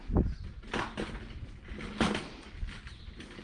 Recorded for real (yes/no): yes